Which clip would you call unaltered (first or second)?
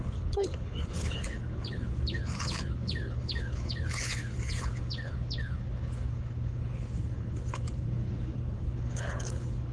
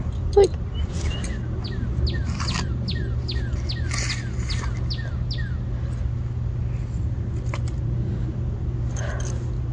second